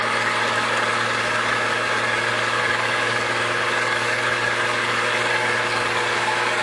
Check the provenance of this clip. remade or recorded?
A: remade